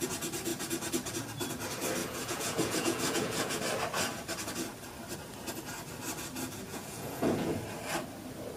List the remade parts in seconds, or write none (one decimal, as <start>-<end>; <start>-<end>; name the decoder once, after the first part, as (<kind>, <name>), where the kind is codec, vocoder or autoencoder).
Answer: 2.0-3.6 (vocoder, Vocos); 6.7-7.6